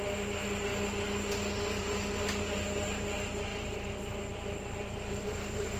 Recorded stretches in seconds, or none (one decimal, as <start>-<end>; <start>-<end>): 0.0-3.5